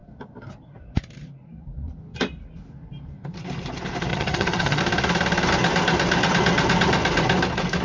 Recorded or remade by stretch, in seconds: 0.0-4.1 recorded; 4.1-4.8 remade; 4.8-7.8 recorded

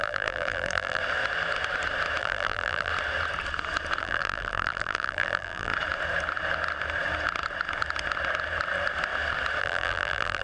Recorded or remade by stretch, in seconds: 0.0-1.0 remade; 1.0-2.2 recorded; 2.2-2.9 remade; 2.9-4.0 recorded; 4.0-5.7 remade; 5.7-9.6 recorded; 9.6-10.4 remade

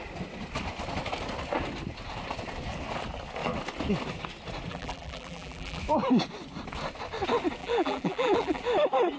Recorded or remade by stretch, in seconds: 0.0-4.7 recorded; 4.7-5.8 remade; 5.8-7.6 recorded; 7.6-8.6 remade; 8.6-9.2 recorded

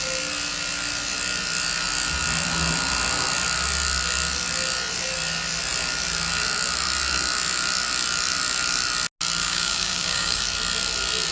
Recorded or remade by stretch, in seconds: 0.0-9.4 recorded; 9.4-10.4 remade; 10.4-11.3 recorded